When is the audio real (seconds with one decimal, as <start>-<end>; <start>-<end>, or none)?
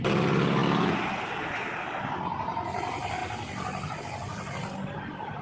0.0-5.4